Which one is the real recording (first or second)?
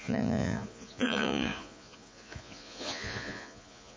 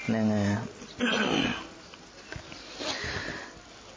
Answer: second